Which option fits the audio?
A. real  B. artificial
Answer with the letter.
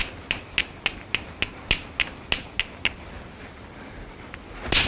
A